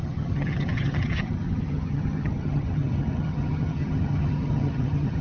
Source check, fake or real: fake